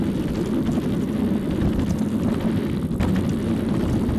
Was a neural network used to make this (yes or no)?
yes